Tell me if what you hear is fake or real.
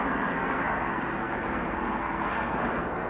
fake